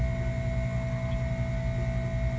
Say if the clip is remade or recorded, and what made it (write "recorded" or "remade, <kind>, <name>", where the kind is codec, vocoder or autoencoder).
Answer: recorded